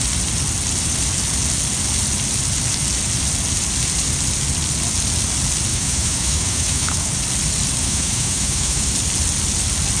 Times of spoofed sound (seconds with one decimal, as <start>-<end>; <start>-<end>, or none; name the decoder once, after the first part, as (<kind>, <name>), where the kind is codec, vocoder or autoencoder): 5.7-7.1 (autoencoder, DAC-VAE); 7.8-8.9